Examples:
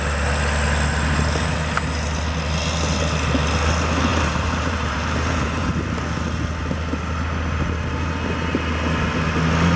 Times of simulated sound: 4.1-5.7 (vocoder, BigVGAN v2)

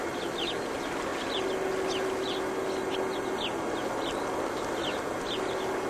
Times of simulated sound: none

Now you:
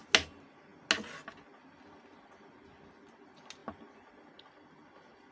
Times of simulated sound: none